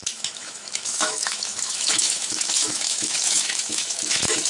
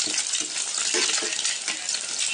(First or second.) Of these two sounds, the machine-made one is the first